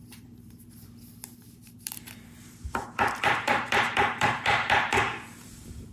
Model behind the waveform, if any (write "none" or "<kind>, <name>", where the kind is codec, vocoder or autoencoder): vocoder, BigVGAN v2